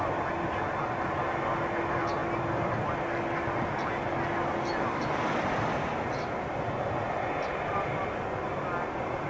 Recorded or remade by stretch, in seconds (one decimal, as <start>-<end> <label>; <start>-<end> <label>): 0.0-9.3 recorded